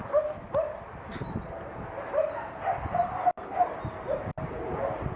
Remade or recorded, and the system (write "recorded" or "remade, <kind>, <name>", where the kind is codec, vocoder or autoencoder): recorded